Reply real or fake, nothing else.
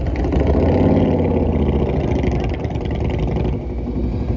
real